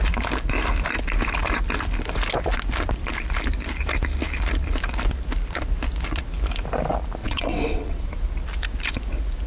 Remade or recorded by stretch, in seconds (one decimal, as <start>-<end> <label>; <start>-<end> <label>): 0.0-7.2 recorded; 7.2-8.1 remade; 8.1-9.5 recorded